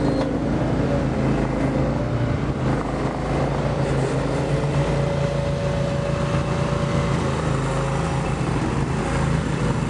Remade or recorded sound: recorded